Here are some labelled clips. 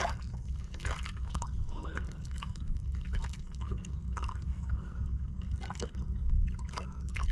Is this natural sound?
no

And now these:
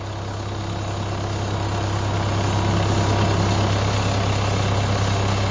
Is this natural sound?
yes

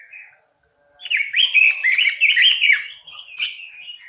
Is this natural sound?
yes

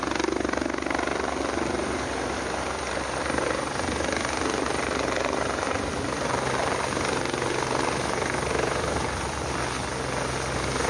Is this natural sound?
yes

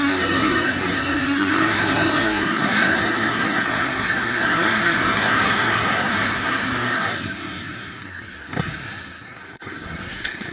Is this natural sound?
no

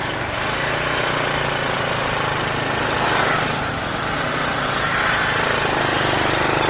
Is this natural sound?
yes